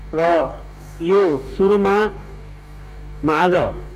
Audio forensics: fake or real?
fake